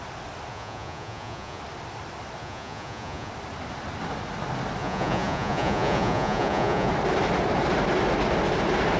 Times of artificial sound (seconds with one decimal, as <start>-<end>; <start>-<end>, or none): 0.5-1.6; 2.4-3.3; 4.8-6.9